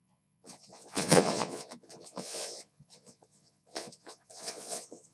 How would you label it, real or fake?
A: fake